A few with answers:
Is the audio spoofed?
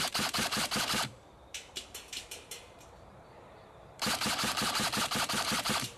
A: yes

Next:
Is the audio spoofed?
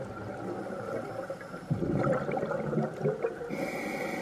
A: no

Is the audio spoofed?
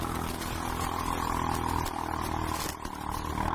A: no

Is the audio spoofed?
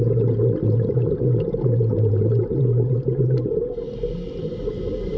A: no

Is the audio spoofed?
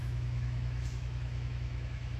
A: yes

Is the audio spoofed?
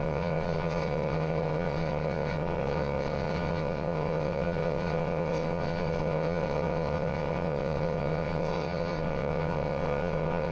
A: yes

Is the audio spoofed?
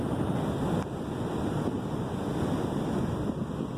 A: no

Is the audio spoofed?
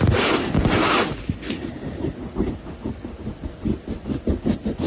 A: no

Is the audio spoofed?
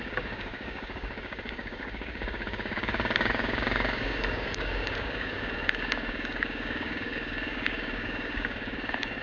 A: yes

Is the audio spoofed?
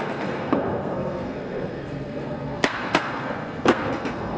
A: yes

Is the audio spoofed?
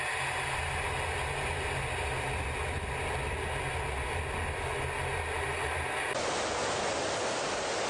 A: no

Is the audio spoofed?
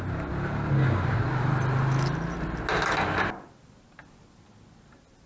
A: no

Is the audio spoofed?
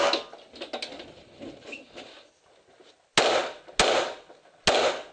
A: no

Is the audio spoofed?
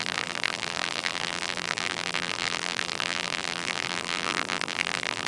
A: yes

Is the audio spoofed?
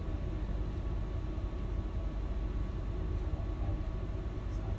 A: no